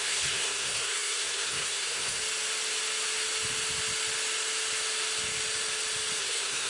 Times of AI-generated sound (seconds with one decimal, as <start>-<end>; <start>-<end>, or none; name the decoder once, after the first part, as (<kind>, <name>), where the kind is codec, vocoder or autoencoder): 0.0-2.2 (codec, SNAC); 6.2-6.7